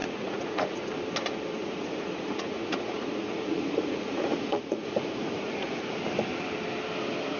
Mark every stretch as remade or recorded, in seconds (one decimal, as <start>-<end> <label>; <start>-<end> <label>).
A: 0.0-0.9 remade; 0.9-1.6 recorded; 1.6-6.0 remade; 6.0-7.4 recorded